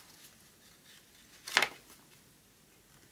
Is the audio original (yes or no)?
yes